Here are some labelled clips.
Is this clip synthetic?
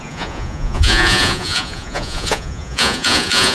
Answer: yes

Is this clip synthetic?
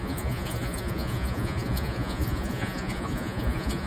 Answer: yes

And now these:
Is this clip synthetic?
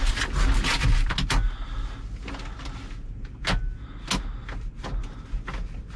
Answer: no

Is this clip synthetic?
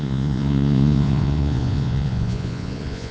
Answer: yes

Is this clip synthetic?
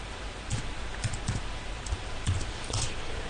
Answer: no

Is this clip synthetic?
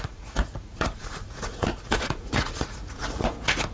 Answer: yes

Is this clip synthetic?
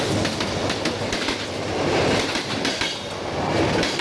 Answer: no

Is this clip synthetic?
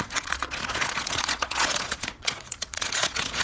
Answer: yes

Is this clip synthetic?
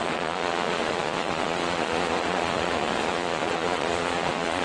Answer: yes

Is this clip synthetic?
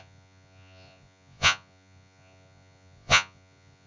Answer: yes